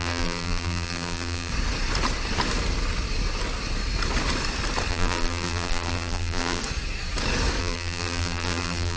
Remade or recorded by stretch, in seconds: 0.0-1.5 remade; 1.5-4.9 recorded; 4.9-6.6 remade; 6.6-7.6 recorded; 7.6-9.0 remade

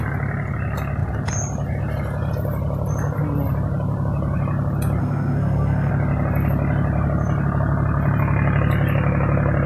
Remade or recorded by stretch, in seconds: 0.0-5.0 recorded; 5.0-5.9 remade; 5.9-9.7 recorded

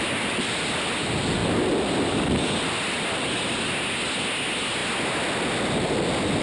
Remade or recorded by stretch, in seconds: 0.0-6.4 recorded

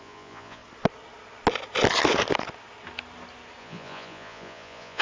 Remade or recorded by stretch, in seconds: 0.0-0.6 remade; 0.6-3.6 recorded; 3.6-5.0 remade

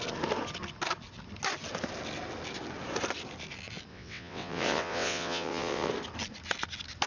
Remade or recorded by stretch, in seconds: 0.0-3.9 recorded; 3.9-5.9 remade; 5.9-7.1 recorded